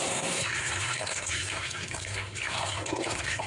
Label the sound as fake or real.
fake